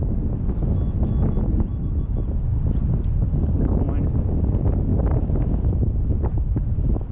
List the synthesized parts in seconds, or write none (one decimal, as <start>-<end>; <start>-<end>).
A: none